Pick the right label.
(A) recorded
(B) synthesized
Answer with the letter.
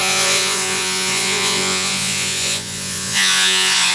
B